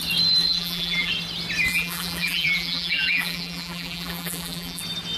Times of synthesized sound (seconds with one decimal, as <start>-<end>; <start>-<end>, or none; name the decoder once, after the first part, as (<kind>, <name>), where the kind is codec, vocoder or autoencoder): 0.4-1.1 (vocoder, BigVGAN v2); 1.7-4.8